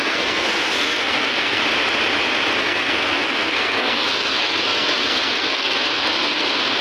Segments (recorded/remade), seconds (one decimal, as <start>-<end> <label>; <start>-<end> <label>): 0.0-1.6 remade; 1.6-2.6 recorded; 2.6-6.8 remade